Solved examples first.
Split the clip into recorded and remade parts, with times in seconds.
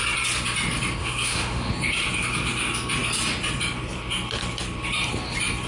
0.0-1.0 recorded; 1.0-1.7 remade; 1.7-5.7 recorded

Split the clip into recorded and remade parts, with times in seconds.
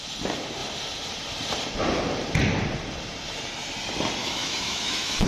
0.0-4.2 recorded; 4.2-5.3 remade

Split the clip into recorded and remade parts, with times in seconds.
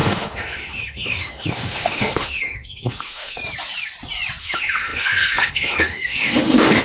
0.0-3.4 remade; 3.4-4.4 recorded; 4.4-6.8 remade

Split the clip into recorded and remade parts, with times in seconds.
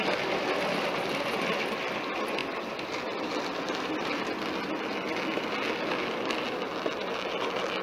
0.0-7.8 recorded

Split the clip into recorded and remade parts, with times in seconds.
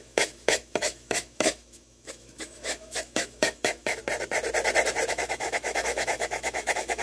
0.0-4.0 remade; 4.0-5.1 recorded; 5.1-7.0 remade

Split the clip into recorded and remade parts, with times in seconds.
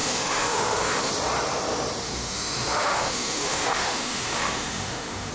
0.0-1.1 remade; 1.1-2.0 recorded; 2.0-5.3 remade